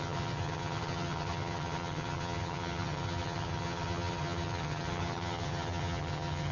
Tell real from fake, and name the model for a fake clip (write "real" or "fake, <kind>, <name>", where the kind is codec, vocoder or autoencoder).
fake, vocoder, HiFi-GAN